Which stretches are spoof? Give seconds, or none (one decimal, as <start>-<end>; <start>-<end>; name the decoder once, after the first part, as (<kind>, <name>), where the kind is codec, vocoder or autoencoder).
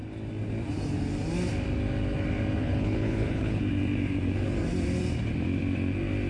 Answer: 2.6-3.6 (codec, HILCodec)